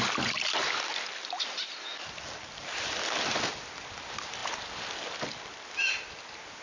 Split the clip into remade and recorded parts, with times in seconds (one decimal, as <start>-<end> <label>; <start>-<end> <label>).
0.0-1.9 recorded; 1.9-3.5 remade; 3.5-4.4 recorded; 4.4-5.9 remade; 5.9-6.6 recorded